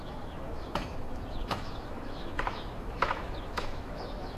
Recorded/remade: remade